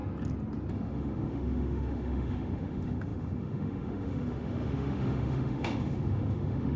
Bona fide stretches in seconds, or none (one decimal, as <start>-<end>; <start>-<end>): 0.0-0.7